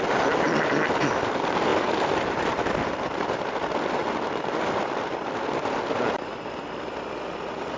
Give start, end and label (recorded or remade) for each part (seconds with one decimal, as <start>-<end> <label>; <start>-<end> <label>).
0.0-1.7 recorded; 1.7-2.8 remade; 2.8-7.8 recorded